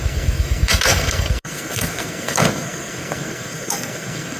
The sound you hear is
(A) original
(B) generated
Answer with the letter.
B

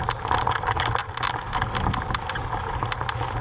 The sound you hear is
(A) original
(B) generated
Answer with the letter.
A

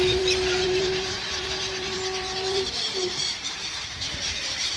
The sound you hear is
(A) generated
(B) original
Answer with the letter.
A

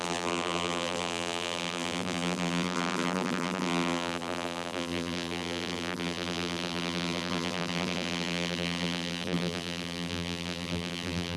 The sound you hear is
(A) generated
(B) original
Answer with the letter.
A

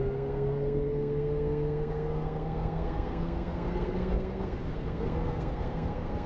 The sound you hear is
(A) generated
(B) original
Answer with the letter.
A